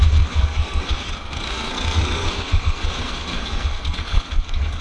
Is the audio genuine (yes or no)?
no